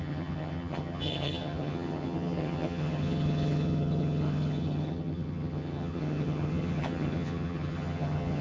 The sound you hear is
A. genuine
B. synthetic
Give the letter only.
B